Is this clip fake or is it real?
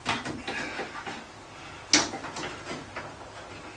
real